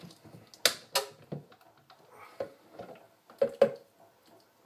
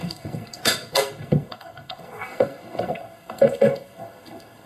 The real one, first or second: first